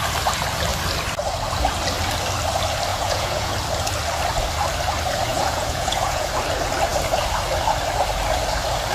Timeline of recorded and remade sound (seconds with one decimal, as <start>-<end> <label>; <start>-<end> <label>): 0.0-2.9 recorded; 2.9-3.5 remade; 3.5-5.3 recorded; 5.3-6.3 remade; 6.3-8.9 recorded